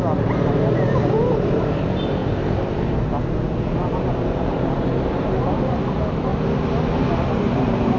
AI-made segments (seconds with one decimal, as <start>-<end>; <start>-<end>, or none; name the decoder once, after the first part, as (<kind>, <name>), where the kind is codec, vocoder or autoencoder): 0.0-6.3 (vocoder, BigVGAN v2); 7.3-8.0

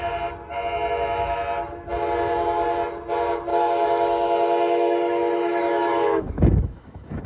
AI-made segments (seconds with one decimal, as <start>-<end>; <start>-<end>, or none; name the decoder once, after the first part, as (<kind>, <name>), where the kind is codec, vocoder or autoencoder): 3.5-7.3 (autoencoder, DAC-VAE)

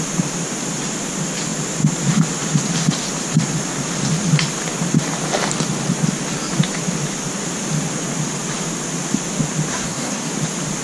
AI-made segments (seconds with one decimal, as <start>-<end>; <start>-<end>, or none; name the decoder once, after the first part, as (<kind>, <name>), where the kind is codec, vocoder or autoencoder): 9.7-10.3 (codec, SNAC)

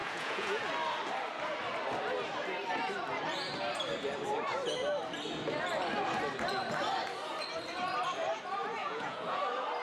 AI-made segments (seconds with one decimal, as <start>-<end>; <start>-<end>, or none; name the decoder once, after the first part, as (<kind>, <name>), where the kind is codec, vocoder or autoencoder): 0.0-0.6 (vocoder, Vocos); 8.8-9.4

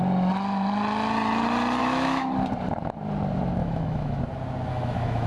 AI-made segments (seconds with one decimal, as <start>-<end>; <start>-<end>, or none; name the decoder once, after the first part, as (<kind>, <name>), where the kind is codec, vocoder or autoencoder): 1.8-2.3 (autoencoder, DAC-VAE); 3.6-4.2; 4.7-5.3

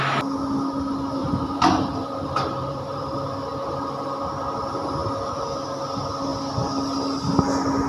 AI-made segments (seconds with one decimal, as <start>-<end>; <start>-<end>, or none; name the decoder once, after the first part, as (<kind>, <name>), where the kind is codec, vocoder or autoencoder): 1.2-3.1 (vocoder, BigVGAN v2)